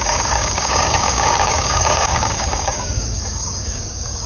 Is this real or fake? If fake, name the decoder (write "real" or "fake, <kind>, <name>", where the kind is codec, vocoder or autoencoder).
fake, codec, DAC